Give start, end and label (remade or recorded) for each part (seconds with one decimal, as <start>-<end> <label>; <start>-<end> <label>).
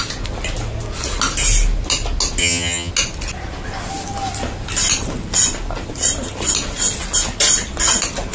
0.0-2.4 recorded; 2.4-2.9 remade; 2.9-8.3 recorded